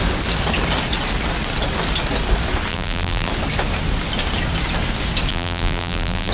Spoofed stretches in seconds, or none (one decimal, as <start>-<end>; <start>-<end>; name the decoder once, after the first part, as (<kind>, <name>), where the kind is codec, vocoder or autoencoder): 2.7-3.3 (vocoder, BigVGAN v2); 5.3-6.3